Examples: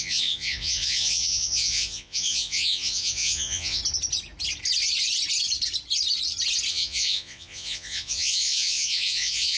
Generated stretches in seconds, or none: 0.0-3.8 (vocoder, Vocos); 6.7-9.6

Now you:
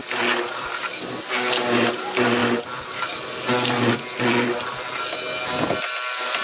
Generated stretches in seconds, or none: none

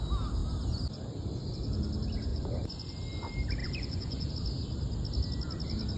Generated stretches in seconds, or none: 2.3-2.9 (vocoder, Vocos); 3.6-4.3

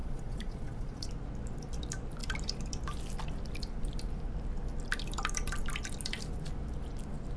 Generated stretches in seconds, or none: 0.0-1.1 (vocoder, Vocos)

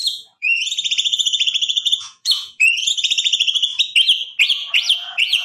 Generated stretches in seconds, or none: 0.0-3.7 (vocoder, Vocos); 4.5-5.4